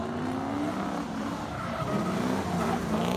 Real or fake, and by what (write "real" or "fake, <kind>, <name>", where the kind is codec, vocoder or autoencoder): real